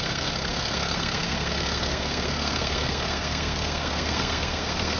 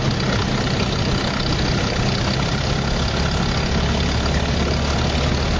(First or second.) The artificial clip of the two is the first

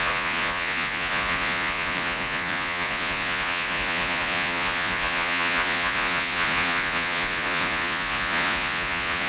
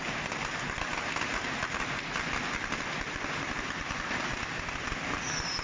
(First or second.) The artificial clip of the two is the first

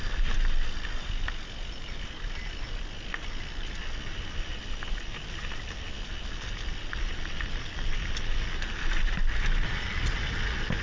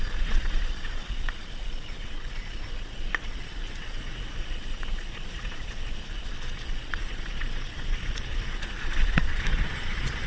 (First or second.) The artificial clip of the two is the second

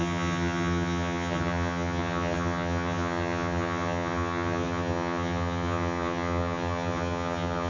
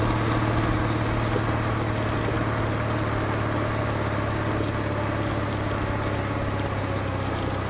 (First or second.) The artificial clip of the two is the first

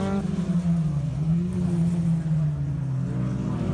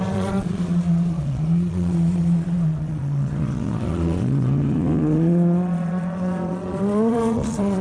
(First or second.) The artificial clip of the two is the second